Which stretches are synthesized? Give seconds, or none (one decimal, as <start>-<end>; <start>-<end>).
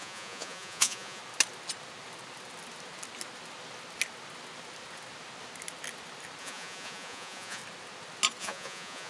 0.0-1.2; 6.4-7.6; 8.4-9.1